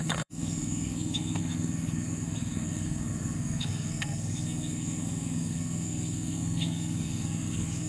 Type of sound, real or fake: fake